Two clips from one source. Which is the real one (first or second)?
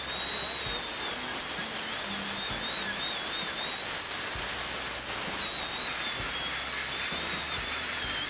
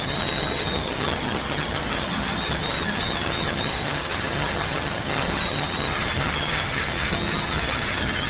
first